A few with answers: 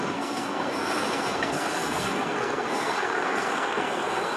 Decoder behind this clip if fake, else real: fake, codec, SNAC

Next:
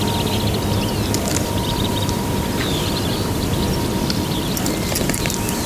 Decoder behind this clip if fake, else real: real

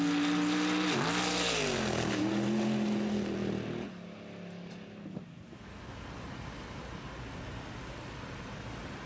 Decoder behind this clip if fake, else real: real